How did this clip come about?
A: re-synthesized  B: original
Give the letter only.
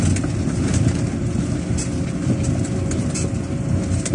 B